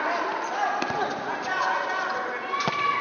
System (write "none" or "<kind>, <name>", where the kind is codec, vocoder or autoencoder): none